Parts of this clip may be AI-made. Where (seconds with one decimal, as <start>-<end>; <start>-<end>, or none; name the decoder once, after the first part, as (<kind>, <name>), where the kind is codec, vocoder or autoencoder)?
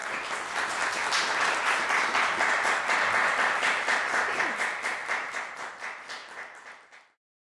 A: none